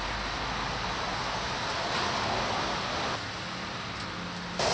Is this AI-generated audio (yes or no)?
no